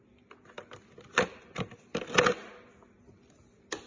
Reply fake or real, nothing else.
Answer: real